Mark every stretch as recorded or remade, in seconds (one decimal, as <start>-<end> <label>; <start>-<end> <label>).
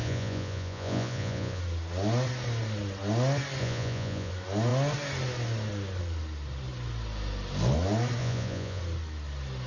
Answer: 0.0-1.6 remade; 1.6-3.6 recorded; 3.6-4.3 remade; 4.3-8.2 recorded; 8.2-8.8 remade; 8.8-9.7 recorded